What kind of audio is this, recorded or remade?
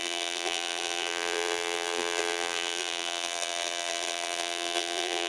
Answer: remade